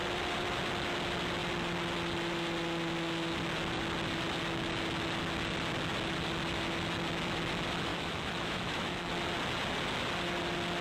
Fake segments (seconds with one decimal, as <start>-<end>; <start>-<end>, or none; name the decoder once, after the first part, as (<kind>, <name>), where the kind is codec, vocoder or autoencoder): 7.9-9.1 (autoencoder, DAC-VAE)